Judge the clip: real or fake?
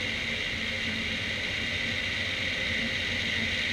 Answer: real